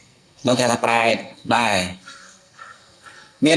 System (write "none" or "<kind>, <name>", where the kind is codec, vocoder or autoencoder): codec, SNAC